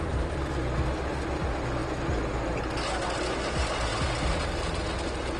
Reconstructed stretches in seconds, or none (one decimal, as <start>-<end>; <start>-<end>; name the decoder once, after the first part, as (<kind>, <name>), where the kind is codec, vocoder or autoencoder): none